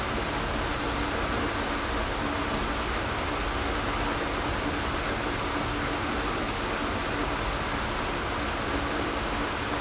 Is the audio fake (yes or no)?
no